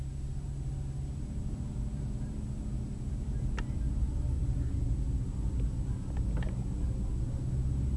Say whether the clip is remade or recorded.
recorded